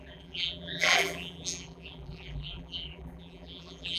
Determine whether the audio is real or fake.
fake